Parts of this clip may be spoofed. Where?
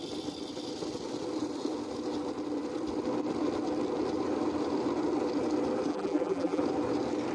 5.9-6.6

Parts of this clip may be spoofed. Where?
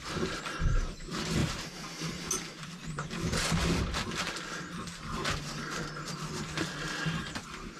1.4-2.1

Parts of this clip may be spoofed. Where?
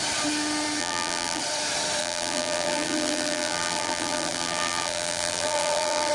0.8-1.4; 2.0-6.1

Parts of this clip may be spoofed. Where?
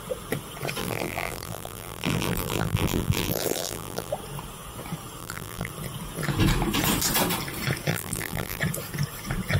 0.8-4.1; 5.2-5.7; 7.9-8.6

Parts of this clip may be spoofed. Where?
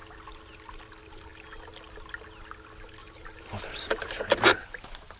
3.0-4.8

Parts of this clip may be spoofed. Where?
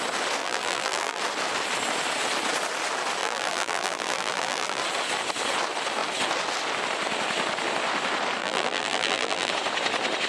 0.4-1.2; 3.2-4.8; 8.4-9.5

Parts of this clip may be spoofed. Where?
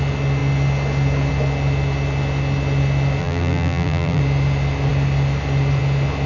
3.2-4.2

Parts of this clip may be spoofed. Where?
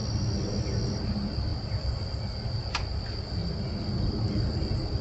1.5-2.8; 3.4-5.0